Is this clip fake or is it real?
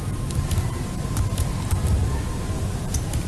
real